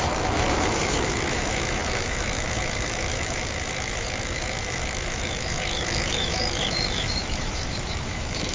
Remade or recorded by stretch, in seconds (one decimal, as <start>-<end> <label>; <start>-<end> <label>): 0.0-8.5 remade

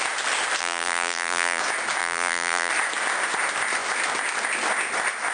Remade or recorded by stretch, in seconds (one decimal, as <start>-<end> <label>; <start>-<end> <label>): 0.0-0.6 recorded; 0.6-1.6 remade; 1.6-2.0 recorded; 2.0-2.7 remade; 2.7-5.3 recorded

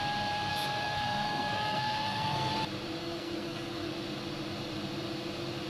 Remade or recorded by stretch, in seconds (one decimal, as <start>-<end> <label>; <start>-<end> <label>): 0.0-0.5 recorded; 0.5-2.5 remade; 2.5-3.0 recorded; 3.0-3.9 remade; 3.9-5.7 recorded

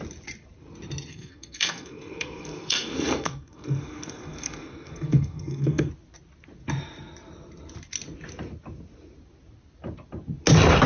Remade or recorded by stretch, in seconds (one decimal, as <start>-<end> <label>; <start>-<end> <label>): 0.0-1.1 recorded; 1.1-5.9 remade; 5.9-10.9 recorded

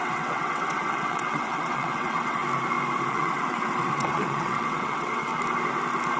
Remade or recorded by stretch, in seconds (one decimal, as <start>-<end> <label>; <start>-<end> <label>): 0.0-2.4 remade; 2.4-3.1 recorded; 3.1-5.3 remade; 5.3-6.2 recorded